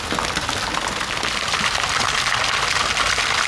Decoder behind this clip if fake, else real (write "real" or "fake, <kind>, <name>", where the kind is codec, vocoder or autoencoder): real